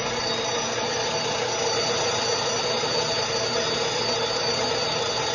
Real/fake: real